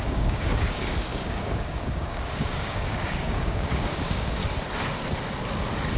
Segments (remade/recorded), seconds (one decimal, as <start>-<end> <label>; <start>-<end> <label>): 0.0-4.4 remade; 4.4-6.0 recorded